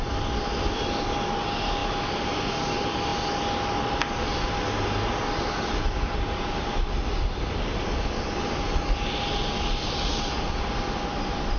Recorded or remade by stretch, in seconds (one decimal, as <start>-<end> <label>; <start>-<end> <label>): 0.0-11.6 recorded